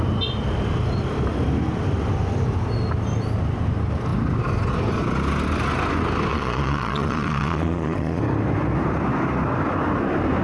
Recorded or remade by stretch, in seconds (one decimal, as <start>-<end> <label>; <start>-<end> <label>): 0.0-6.3 recorded; 6.3-8.2 remade; 8.2-10.4 recorded